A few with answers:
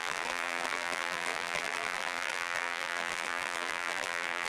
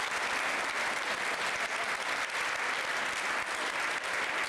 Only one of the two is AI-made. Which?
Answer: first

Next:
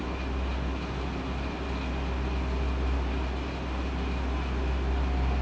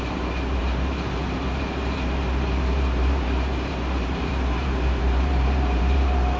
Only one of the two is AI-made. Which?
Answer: second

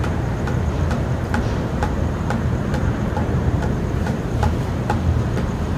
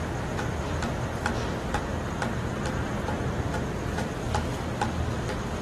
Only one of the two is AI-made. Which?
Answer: first